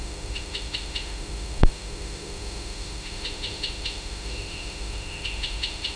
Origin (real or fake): fake